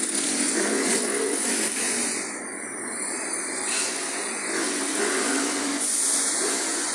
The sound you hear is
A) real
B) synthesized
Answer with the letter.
B